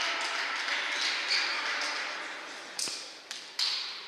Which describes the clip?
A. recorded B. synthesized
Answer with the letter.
A